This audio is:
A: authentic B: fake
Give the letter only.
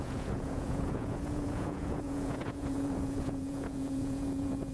B